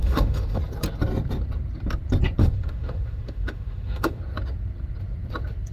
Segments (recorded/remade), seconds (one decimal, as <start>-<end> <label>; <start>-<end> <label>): 0.0-0.6 remade; 0.6-2.4 recorded; 2.4-4.2 remade; 4.2-5.7 recorded